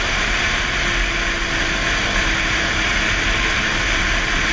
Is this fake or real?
real